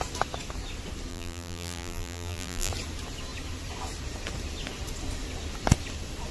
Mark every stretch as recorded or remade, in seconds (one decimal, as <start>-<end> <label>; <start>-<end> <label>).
0.0-1.1 recorded; 1.1-2.7 remade; 2.7-6.3 recorded